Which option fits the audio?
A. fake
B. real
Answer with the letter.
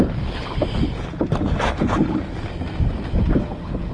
B